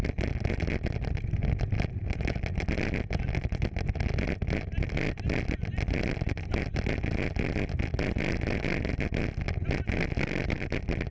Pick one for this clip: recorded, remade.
recorded